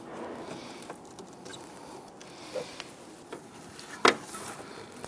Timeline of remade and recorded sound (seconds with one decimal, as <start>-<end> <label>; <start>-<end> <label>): 0.0-5.1 recorded